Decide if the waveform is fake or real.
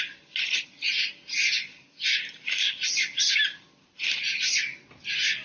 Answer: real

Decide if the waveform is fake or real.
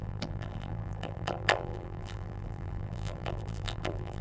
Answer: fake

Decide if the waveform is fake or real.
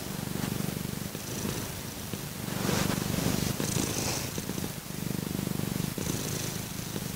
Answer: real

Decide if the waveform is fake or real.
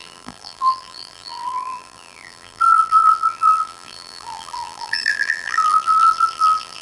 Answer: fake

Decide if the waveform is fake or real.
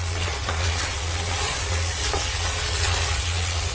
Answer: fake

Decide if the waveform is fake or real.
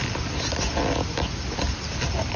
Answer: real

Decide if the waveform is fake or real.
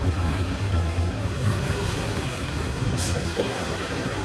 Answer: fake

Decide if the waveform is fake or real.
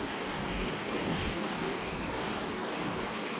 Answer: fake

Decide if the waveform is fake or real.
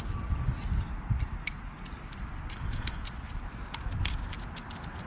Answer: real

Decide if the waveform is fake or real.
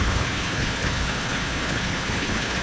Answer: fake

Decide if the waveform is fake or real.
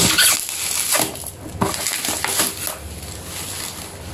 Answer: real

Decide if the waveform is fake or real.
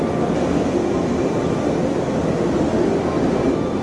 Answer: real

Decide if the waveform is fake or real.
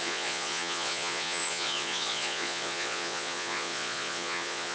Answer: fake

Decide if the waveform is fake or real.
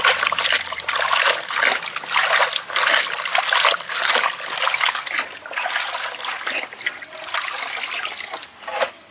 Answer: real